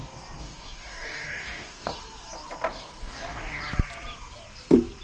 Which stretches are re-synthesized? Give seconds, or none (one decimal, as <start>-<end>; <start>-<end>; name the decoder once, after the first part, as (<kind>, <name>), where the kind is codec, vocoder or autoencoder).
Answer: 0.4-2.0 (codec, DAC); 2.7-3.6